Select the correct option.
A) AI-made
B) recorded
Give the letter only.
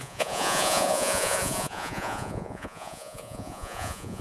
A